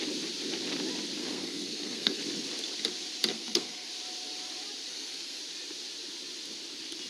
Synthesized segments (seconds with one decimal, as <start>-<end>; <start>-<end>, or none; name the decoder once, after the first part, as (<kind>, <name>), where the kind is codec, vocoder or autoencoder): 1.2-2.2 (codec, SNAC); 3.3-3.9; 4.9-5.4